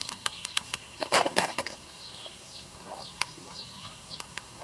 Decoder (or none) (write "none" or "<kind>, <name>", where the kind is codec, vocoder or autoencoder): codec, SNAC